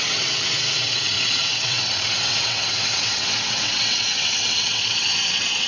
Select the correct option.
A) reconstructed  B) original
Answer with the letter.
A